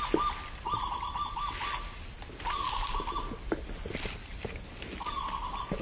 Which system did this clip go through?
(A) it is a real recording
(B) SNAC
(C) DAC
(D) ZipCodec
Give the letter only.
A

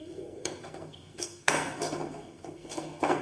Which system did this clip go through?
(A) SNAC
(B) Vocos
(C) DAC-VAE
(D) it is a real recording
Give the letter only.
A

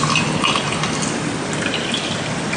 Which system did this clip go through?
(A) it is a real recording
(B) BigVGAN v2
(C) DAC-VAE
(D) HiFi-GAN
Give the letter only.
A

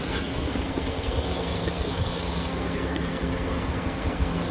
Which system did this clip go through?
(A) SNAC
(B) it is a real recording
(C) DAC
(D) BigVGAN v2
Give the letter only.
A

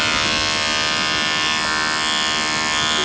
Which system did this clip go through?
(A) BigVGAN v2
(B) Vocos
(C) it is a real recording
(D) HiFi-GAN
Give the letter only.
C